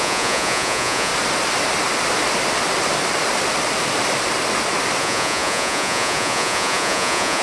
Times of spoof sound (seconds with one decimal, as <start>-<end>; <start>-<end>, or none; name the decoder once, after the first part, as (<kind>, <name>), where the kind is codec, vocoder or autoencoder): 0.0-1.1 (vocoder, Vocos); 5.0-7.4